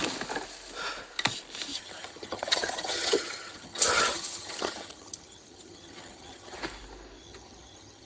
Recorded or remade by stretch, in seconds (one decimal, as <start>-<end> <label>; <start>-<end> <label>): 0.0-1.7 recorded; 1.7-6.6 remade; 6.6-7.2 recorded; 7.2-8.1 remade